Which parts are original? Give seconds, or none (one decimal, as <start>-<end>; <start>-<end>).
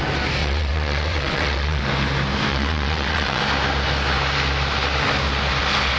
0.0-0.4; 1.8-2.5; 3.4-6.0